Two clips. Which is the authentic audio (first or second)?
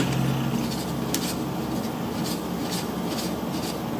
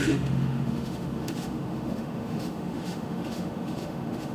first